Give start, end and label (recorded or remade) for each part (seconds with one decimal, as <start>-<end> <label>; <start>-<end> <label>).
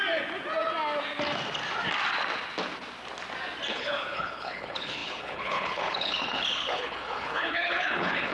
0.0-3.7 recorded; 3.7-8.3 remade